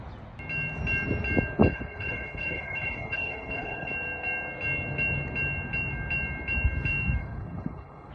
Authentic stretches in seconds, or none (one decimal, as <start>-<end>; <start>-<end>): 0.0-1.6; 3.9-7.2

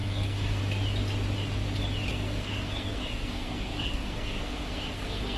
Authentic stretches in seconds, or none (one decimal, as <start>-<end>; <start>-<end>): 0.6-2.1

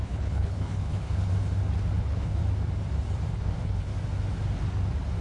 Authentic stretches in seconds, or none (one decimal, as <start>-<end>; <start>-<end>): 1.3-2.0; 2.4-3.3; 3.9-5.2

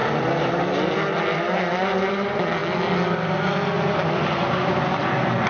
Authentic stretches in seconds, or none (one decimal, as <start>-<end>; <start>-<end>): 0.0-5.5

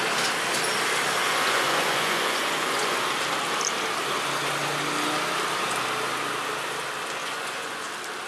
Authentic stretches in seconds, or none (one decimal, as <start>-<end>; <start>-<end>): 0.0-1.2; 3.0-7.2; 7.9-8.3

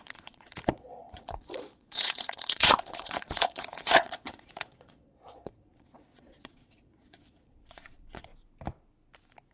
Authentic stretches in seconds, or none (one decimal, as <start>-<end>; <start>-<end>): 8.3-9.5

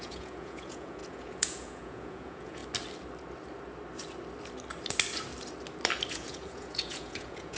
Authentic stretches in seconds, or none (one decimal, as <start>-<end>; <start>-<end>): 2.6-6.1

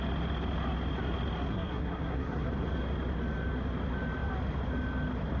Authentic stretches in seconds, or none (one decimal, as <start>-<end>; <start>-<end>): 0.0-1.5; 2.5-5.4